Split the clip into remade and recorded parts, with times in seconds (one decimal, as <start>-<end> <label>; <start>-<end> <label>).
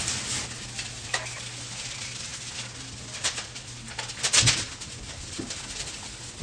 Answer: 0.0-6.4 recorded